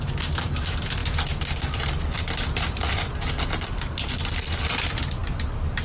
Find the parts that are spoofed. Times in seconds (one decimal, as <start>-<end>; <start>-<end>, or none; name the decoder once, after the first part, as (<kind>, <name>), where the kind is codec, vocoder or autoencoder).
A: none